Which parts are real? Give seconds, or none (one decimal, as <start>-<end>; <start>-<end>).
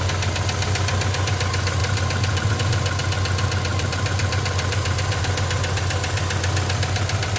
0.0-1.8; 2.5-3.7; 5.2-7.4